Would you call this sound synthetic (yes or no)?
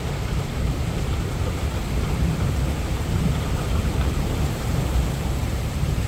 yes